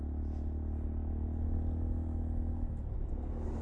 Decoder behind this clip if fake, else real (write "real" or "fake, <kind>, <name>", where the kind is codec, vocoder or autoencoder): real